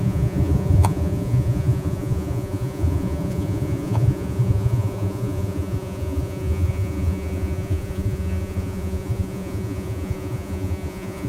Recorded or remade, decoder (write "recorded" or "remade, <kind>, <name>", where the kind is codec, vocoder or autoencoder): remade, vocoder, Vocos